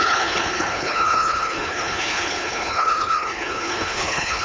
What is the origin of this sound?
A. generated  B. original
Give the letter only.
A